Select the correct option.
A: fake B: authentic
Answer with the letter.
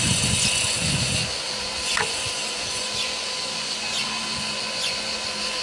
A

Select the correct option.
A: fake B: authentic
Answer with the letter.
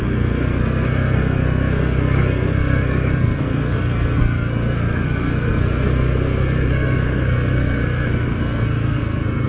A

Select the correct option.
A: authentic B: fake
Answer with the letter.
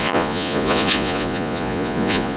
B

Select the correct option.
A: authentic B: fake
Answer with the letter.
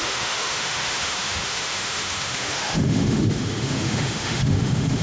B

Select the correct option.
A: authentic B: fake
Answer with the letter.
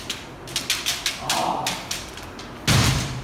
A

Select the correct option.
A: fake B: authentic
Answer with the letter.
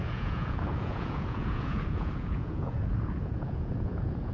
A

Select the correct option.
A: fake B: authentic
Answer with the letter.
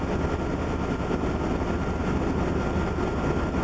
B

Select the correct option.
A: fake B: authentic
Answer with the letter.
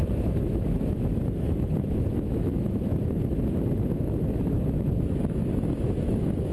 A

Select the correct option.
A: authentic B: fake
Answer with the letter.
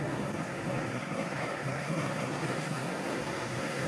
B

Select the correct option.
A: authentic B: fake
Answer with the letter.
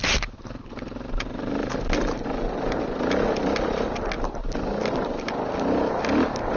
A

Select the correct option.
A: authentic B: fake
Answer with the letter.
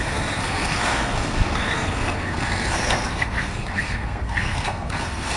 B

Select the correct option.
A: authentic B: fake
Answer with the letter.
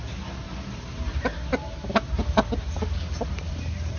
A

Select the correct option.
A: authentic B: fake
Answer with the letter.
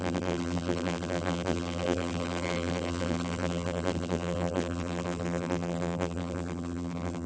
B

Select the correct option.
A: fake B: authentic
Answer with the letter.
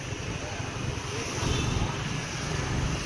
B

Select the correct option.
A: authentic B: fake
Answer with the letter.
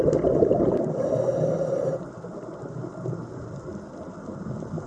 A